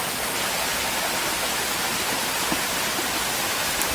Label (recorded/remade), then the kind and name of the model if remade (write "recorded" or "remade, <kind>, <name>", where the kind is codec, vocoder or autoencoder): recorded